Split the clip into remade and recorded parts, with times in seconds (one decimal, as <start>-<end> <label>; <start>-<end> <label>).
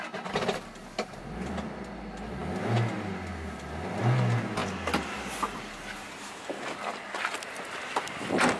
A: 0.0-8.6 recorded